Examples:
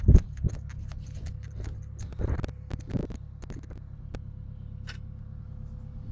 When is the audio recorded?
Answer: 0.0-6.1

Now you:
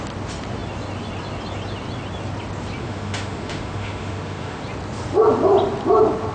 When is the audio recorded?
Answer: 0.0-2.8; 4.6-6.3